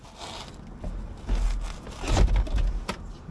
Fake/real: real